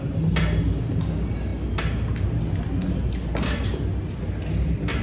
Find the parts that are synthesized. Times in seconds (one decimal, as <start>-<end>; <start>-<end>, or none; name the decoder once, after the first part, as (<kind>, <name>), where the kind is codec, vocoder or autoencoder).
none